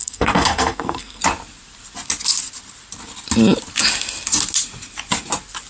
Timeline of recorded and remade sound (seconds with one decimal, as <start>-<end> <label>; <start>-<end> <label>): 0.0-1.2 remade; 1.2-5.7 recorded